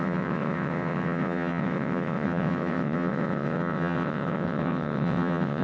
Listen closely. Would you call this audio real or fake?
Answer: fake